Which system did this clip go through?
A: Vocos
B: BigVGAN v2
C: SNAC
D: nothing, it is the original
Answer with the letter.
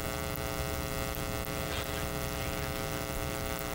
D